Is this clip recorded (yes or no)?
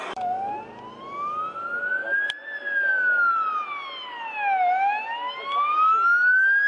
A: yes